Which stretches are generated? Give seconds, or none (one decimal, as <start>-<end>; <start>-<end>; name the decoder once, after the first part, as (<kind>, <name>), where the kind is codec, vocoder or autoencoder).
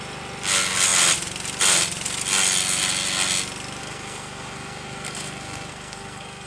3.8-6.5 (codec, SNAC)